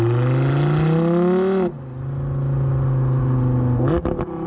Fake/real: real